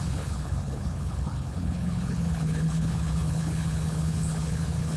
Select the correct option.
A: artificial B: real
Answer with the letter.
A